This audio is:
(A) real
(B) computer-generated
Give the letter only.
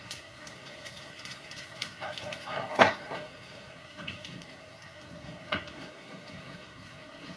B